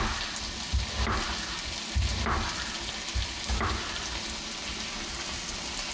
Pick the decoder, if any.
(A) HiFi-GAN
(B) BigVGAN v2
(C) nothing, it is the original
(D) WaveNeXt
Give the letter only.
C